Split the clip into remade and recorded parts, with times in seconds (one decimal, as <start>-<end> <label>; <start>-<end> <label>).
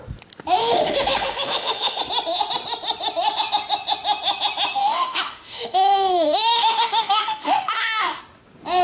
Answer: 0.0-0.6 recorded; 0.6-2.0 remade; 2.0-4.8 recorded; 4.8-8.2 remade; 8.2-8.8 recorded